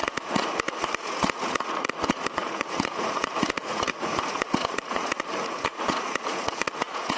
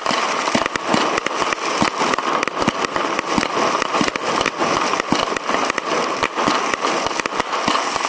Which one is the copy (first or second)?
first